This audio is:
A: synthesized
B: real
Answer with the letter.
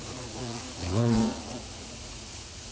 A